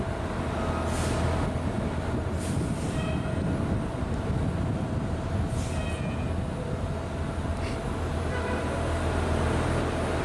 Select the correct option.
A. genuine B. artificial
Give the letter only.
A